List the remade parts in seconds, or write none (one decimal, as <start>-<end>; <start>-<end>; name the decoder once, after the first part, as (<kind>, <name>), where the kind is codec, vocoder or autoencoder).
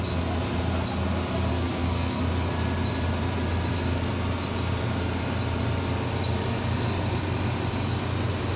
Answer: 1.5-2.2 (codec, SNAC)